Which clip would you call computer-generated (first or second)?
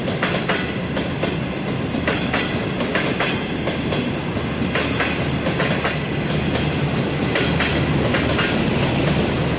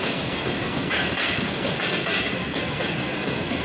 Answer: second